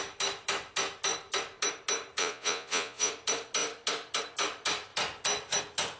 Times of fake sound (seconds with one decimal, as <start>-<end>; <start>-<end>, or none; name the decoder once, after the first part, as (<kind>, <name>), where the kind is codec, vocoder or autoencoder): 2.2-3.1 (vocoder, Vocos)